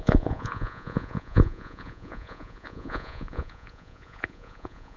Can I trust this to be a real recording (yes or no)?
no